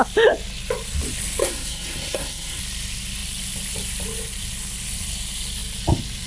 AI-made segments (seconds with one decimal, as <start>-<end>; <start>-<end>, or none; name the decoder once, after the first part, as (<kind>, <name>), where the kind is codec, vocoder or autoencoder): 1.4-2.6 (codec, SNAC)